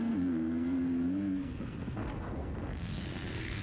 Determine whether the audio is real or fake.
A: fake